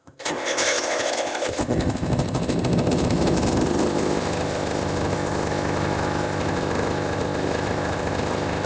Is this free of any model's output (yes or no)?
no